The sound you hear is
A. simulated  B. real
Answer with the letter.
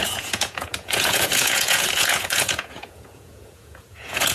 A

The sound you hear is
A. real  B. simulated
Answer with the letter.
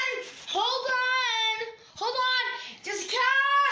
A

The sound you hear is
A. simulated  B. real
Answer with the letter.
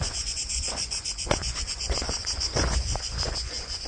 A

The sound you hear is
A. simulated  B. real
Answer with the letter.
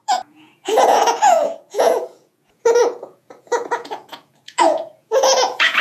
A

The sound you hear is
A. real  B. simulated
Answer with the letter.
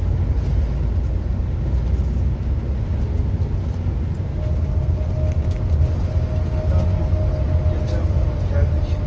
A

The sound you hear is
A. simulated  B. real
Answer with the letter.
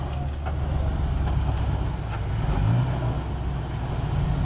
B